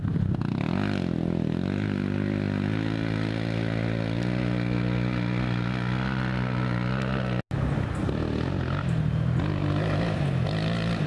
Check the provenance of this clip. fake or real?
real